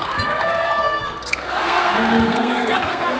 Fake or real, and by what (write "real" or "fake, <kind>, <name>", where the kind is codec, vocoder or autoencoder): fake, codec, SNAC